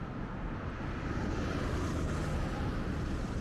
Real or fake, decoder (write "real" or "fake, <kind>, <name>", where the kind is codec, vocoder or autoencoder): real